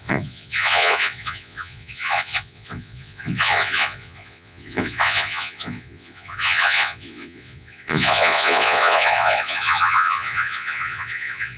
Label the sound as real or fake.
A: fake